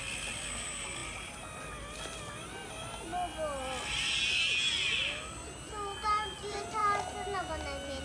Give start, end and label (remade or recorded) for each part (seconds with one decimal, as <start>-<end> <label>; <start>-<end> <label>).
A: 0.0-8.0 recorded